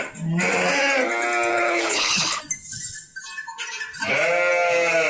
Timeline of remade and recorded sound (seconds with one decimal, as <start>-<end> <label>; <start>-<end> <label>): 0.0-1.5 recorded; 1.5-2.4 remade; 2.4-5.1 recorded